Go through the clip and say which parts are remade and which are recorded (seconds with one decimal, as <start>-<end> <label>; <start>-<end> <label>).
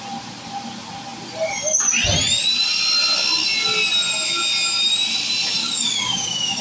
0.0-5.6 recorded; 5.6-6.6 remade